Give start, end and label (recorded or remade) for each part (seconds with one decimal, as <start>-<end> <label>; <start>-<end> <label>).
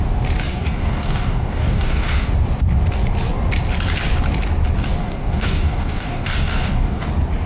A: 0.0-0.5 recorded; 0.5-2.3 remade; 2.3-5.0 recorded; 5.0-7.1 remade; 7.1-7.5 recorded